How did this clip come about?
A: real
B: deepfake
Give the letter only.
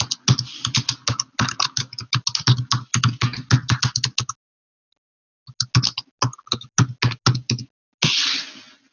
A